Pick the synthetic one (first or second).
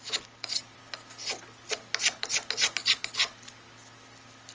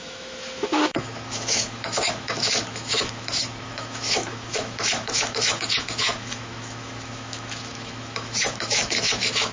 second